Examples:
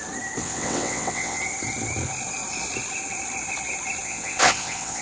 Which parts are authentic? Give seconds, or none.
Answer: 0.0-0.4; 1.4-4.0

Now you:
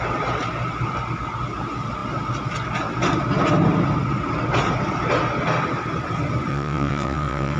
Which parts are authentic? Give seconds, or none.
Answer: 0.0-6.5

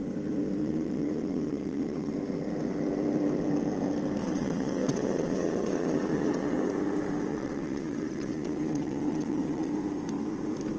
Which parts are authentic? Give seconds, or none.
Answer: 0.0-0.6; 2.1-4.2; 6.7-7.3; 9.7-10.8